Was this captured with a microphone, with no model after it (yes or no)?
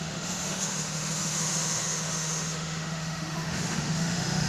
no